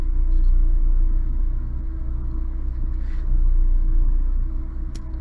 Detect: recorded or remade remade